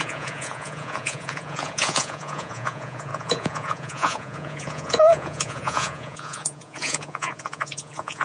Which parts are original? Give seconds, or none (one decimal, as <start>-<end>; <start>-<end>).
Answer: none